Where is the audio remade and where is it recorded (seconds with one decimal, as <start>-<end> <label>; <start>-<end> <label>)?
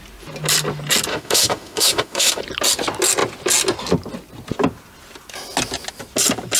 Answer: 0.0-1.1 recorded; 1.1-2.4 remade; 2.4-6.6 recorded